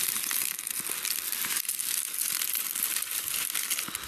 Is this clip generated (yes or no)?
no